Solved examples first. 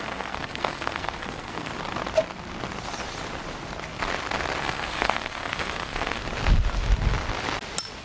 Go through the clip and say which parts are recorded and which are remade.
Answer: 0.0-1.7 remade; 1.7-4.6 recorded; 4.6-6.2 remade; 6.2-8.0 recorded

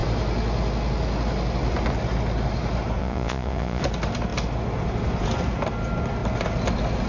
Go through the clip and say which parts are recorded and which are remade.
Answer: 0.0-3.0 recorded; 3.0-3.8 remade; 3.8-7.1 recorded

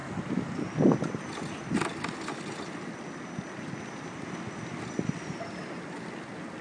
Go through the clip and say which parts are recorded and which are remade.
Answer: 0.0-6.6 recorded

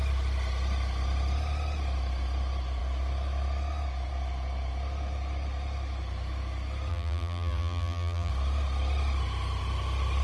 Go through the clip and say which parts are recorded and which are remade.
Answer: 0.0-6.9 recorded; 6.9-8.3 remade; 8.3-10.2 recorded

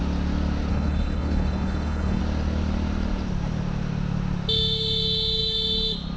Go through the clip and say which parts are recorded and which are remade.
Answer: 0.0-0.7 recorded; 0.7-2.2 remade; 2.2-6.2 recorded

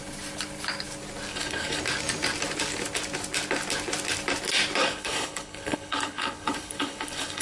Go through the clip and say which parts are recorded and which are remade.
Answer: 0.0-1.3 recorded; 1.3-1.8 remade; 1.8-4.8 recorded; 4.8-7.4 remade

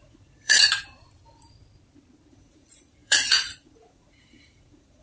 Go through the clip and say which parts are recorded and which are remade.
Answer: 0.0-0.6 remade; 0.6-2.3 recorded; 2.3-5.0 remade

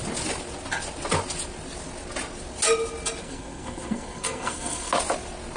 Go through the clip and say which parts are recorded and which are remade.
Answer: 0.0-3.2 recorded; 3.2-4.9 remade; 4.9-5.6 recorded